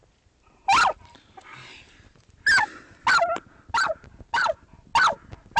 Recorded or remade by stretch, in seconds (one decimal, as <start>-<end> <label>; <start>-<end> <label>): 0.0-3.3 recorded; 3.3-4.9 remade; 4.9-5.6 recorded